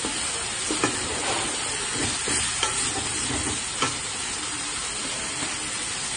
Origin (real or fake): real